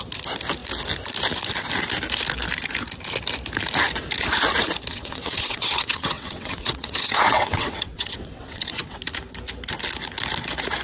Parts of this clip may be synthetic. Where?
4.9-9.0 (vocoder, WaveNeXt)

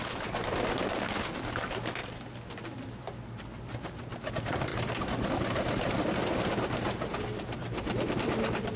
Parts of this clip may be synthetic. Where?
4.7-5.9 (vocoder, BigVGAN v2)

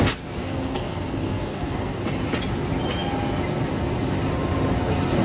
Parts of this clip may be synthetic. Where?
0.4-2.0 (codec, SNAC)

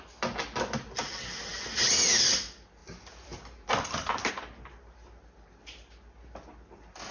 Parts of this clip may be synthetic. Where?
2.8-4.3 (vocoder, BigVGAN v2)

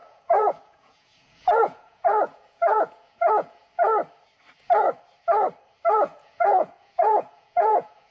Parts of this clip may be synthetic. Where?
0.0-3.9 (vocoder, Vocos); 5.9-8.1